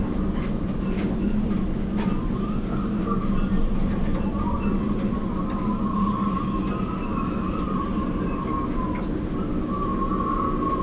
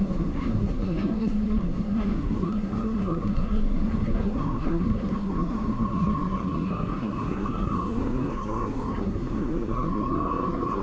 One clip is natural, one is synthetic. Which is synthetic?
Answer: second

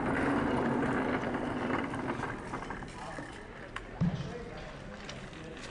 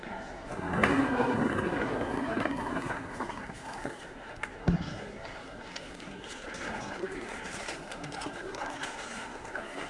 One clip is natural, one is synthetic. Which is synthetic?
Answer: second